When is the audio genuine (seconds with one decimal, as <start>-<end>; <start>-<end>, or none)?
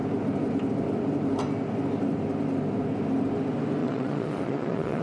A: 0.0-3.8